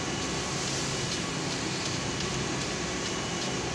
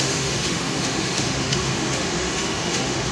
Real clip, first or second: first